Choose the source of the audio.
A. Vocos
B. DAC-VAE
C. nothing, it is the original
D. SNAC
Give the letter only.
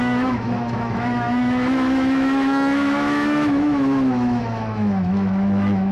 B